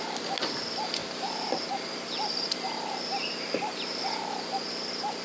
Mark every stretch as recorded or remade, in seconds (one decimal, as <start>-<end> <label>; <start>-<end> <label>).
0.0-1.0 recorded; 1.0-4.0 remade; 4.0-5.2 recorded